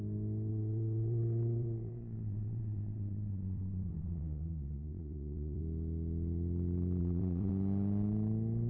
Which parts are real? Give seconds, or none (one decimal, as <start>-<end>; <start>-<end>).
0.0-0.5; 5.6-7.0; 7.5-8.7